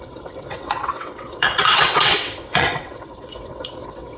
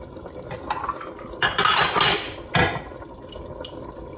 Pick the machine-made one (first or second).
first